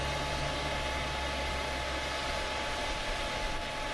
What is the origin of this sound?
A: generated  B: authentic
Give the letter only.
B